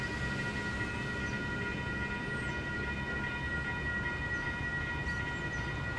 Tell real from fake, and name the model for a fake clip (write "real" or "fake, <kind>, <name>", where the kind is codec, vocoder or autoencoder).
real